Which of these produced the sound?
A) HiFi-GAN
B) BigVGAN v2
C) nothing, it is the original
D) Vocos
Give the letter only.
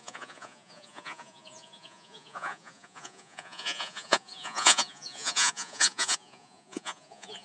D